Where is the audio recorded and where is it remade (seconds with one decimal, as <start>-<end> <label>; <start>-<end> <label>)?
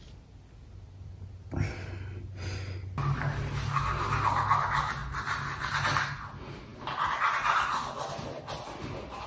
0.0-9.3 recorded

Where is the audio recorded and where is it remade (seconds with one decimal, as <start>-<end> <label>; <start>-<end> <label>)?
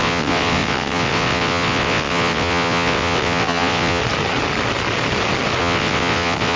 0.0-4.0 remade; 4.0-5.6 recorded; 5.6-6.6 remade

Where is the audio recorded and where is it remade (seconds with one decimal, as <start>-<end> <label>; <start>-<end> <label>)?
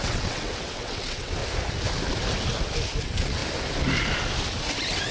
0.0-1.4 remade; 1.4-3.0 recorded; 3.0-3.4 remade; 3.4-5.1 recorded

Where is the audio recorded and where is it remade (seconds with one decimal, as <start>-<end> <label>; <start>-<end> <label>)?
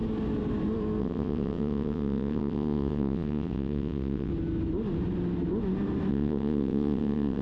0.0-1.0 recorded; 1.0-4.3 remade; 4.3-6.1 recorded; 6.1-7.4 remade